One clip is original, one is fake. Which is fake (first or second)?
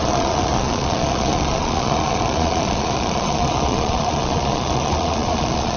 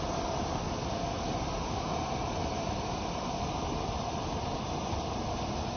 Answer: first